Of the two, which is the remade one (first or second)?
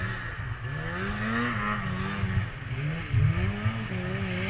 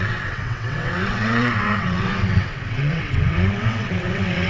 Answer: second